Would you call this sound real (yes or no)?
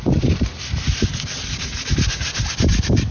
yes